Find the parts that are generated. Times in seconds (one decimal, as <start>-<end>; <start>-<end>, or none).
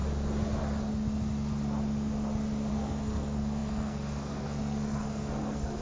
2.7-5.8